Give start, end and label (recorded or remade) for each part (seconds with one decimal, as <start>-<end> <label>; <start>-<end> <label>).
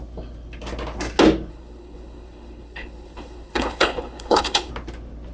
0.0-1.5 recorded; 1.5-4.7 remade; 4.7-5.3 recorded